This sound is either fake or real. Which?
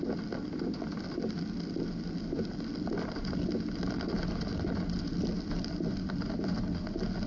real